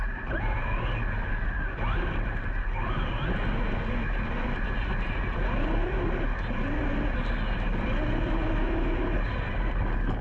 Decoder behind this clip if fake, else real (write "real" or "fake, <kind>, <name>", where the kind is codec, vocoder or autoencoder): real